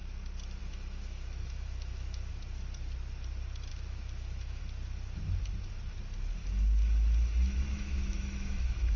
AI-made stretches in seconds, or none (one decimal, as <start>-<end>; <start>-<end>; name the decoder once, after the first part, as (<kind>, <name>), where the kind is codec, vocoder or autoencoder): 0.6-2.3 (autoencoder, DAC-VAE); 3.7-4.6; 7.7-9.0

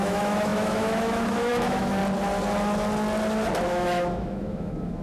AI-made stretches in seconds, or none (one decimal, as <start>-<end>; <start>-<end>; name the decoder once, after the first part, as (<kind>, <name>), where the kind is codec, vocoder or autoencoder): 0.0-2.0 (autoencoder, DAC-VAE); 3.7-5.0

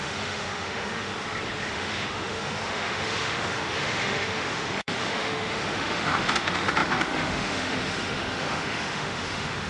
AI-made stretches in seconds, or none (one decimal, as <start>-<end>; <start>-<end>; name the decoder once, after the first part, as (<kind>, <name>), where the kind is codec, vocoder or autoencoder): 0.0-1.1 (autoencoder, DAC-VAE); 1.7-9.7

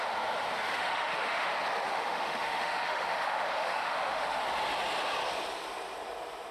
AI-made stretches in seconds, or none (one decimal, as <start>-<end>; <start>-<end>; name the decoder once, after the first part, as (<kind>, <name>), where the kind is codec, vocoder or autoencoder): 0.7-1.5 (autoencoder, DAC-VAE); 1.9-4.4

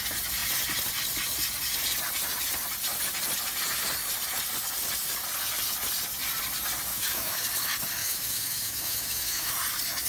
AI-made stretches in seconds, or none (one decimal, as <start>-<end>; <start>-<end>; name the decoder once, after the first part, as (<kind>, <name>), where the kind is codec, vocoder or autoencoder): 6.9-7.4 (autoencoder, DAC-VAE); 8.0-9.5